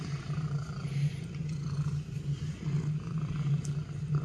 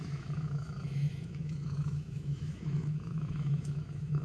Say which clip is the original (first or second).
first